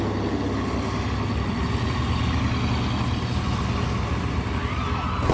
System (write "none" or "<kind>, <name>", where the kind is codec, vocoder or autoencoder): none